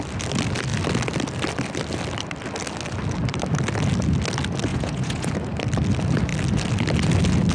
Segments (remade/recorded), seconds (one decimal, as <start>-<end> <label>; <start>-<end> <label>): 0.0-4.7 recorded; 4.7-5.3 remade; 5.3-7.5 recorded